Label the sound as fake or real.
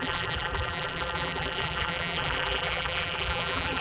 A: fake